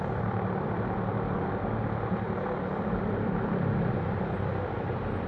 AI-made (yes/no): yes